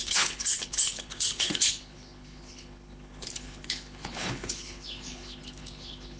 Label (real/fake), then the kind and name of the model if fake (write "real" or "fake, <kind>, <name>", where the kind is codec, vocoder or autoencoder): fake, codec, HILCodec